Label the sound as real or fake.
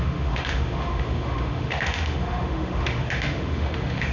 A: fake